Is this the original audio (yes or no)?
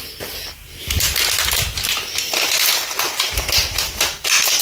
yes